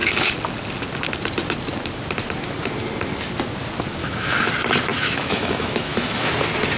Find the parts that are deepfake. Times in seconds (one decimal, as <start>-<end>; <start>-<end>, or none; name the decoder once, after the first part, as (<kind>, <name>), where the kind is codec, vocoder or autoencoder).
4.0-4.5 (autoencoder, DAC-VAE); 4.9-6.3